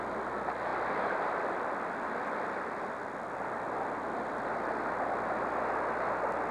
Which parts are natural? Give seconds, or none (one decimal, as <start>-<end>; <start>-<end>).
0.0-0.7; 4.6-6.5